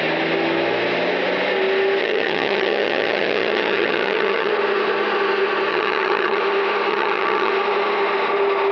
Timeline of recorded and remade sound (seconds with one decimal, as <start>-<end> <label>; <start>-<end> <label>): 0.0-2.0 recorded; 2.0-4.5 remade; 4.5-5.7 recorded; 5.7-6.4 remade; 6.4-6.9 recorded; 6.9-7.5 remade; 7.5-8.7 recorded